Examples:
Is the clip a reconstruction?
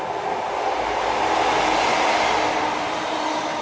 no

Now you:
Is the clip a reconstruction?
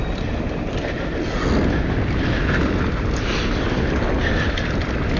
no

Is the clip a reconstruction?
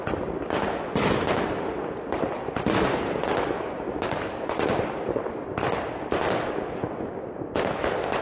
no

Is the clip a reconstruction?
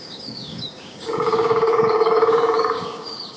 yes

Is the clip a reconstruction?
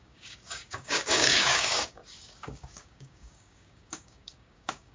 yes